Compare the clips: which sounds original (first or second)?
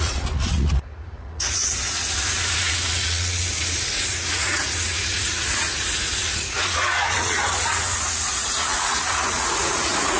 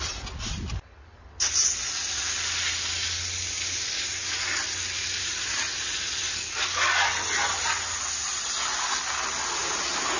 second